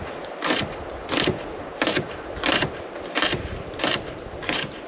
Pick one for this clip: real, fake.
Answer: real